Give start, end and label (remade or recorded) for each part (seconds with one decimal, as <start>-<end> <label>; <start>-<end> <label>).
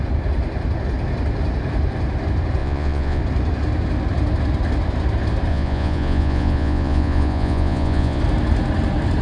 0.0-2.6 recorded; 2.6-3.2 remade; 3.2-5.5 recorded; 5.5-8.2 remade; 8.2-9.2 recorded